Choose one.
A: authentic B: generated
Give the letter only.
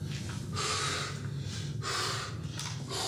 A